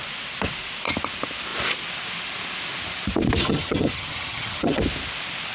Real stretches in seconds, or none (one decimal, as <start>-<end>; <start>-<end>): 0.0-3.4; 4.8-5.5